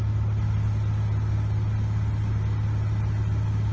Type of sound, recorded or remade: recorded